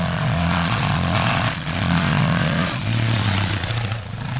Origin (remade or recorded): remade